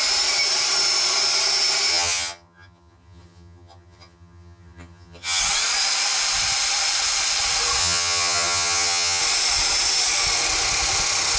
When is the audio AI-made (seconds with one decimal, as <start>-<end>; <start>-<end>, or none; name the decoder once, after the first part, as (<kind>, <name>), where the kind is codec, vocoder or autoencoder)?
1.9-5.4 (vocoder, HiFi-GAN); 7.8-9.2